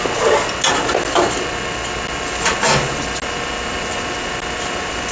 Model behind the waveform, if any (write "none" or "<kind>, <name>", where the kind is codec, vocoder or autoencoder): none